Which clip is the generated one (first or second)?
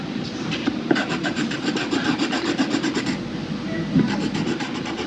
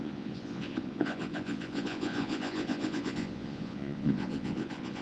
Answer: second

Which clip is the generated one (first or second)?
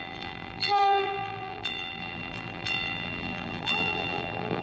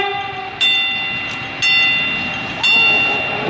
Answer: first